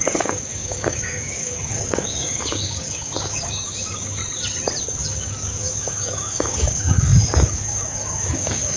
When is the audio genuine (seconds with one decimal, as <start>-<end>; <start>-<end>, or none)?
4.2-4.8